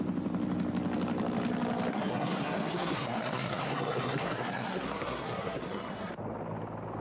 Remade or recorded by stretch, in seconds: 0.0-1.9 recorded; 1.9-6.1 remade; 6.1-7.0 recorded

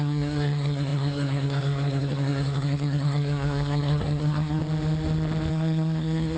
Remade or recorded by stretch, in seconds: 0.0-4.6 remade; 4.6-5.5 recorded; 5.5-6.4 remade

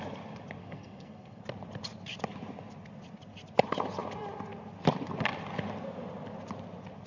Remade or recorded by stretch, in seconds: 0.0-0.6 recorded; 0.6-1.4 remade; 1.4-7.1 recorded

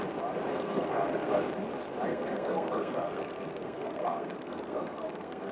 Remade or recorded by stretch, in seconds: 0.0-0.5 recorded; 0.5-1.3 remade; 1.3-2.1 recorded; 2.1-5.5 remade

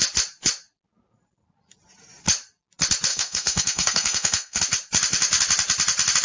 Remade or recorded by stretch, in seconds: 0.0-3.1 recorded; 3.1-4.6 remade; 4.6-6.2 recorded

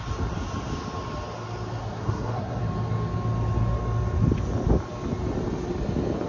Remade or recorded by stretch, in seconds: 0.0-1.8 recorded; 1.8-2.6 remade; 2.6-6.3 recorded

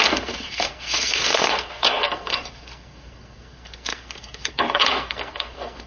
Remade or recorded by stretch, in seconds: 0.0-5.9 remade

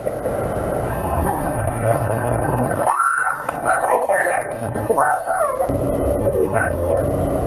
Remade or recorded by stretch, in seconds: 0.0-0.9 recorded; 0.9-5.4 remade; 5.4-6.2 recorded; 6.2-7.0 remade; 7.0-7.5 recorded